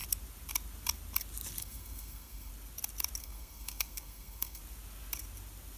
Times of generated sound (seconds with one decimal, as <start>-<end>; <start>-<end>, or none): 1.6-2.5; 3.2-4.6